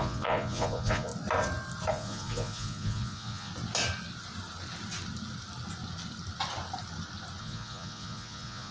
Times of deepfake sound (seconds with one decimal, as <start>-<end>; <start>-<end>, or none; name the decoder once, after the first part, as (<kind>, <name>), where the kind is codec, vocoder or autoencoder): 0.0-1.1 (vocoder, Vocos); 1.9-3.5; 7.4-8.7